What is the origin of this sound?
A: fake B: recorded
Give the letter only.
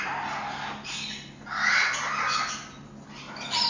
B